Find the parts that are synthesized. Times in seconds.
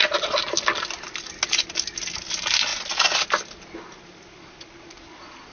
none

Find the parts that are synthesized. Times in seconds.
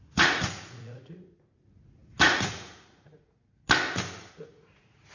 0.0-3.6 (vocoder, Vocos); 4.3-5.1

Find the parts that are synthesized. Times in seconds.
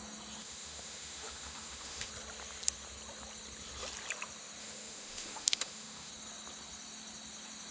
0.4-2.1 (autoencoder, DAC-VAE); 4.6-6.1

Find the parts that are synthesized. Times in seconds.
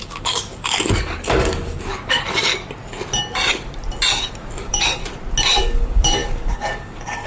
0.0-2.5 (codec, DAC); 4.6-5.0; 5.6-7.3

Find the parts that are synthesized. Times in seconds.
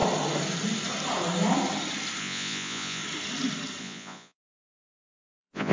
2.2-3.0 (vocoder, Vocos); 3.8-5.7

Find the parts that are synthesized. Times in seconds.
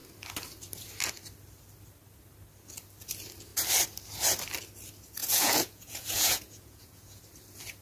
5.2-7.2 (vocoder, Vocos)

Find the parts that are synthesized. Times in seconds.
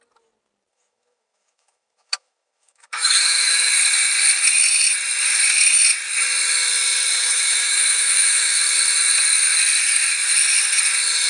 0.7-3.7 (autoencoder, DAC-VAE); 7.1-8.6